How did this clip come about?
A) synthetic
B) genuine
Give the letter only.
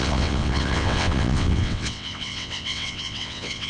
A